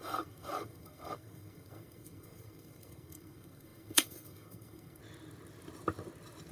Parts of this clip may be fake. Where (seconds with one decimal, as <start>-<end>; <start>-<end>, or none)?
0.0-5.0